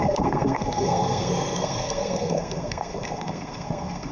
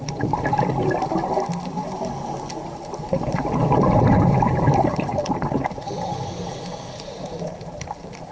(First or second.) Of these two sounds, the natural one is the second